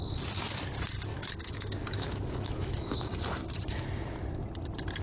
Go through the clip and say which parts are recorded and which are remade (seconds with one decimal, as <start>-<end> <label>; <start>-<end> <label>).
0.0-1.1 recorded; 1.1-3.1 remade; 3.1-5.0 recorded